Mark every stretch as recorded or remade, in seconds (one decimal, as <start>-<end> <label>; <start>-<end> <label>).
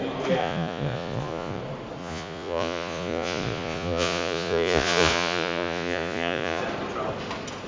0.0-0.4 recorded; 0.4-1.6 remade; 1.6-2.0 recorded; 2.0-6.6 remade; 6.6-7.7 recorded